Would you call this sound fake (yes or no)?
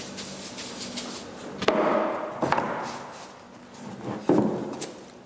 no